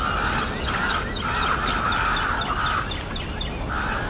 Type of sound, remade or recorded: recorded